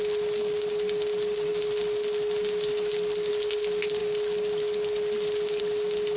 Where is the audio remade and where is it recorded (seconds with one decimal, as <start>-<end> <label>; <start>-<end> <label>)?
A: 0.0-6.2 recorded